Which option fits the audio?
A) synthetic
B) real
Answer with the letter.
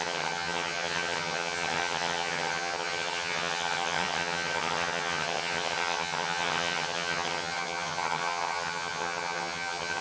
A